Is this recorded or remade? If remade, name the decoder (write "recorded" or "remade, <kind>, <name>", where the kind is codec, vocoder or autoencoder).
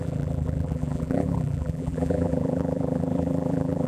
remade, vocoder, BigVGAN v2